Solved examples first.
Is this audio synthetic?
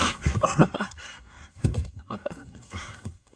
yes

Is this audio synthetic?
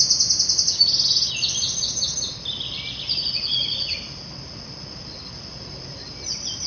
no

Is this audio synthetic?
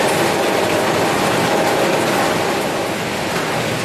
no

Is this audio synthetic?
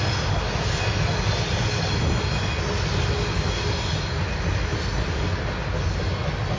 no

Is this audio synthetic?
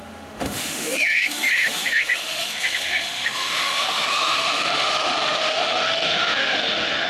yes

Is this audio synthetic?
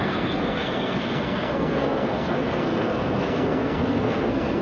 yes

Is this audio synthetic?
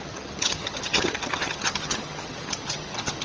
yes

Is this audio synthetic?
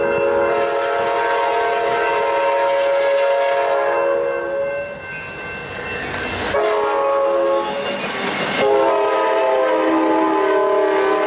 no